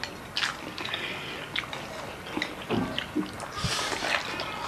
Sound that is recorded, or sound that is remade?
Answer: recorded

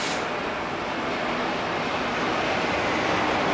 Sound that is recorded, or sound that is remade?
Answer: recorded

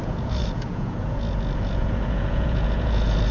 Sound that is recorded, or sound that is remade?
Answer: remade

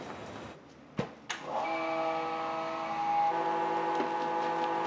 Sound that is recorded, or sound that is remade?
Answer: recorded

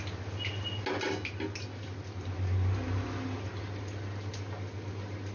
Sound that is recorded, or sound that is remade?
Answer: recorded